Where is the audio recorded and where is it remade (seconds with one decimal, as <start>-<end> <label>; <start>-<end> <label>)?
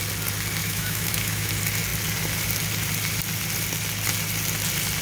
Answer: 0.0-0.6 recorded; 0.6-1.5 remade; 1.5-5.0 recorded